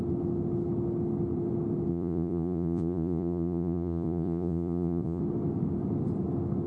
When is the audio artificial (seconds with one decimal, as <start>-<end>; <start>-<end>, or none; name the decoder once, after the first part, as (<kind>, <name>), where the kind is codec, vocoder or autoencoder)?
1.9-5.2 (vocoder, Vocos)